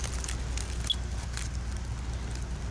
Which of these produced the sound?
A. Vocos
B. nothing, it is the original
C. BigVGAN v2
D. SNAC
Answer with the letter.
B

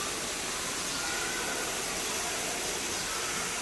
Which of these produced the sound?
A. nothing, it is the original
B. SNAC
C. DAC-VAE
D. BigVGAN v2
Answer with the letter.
A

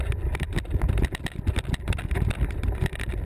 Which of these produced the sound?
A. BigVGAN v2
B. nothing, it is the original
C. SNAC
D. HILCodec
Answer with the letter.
B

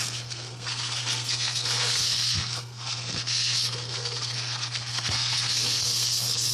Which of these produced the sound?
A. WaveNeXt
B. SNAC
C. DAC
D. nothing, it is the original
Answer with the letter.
B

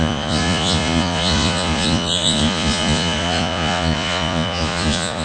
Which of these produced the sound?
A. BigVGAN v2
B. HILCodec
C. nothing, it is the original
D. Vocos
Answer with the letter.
D